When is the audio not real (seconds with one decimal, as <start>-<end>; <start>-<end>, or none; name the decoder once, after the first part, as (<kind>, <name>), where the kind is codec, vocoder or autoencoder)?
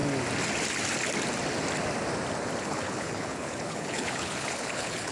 2.6-5.1 (codec, HILCodec)